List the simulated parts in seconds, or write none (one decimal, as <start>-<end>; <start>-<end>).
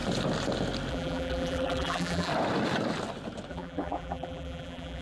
0.9-2.3; 3.5-5.0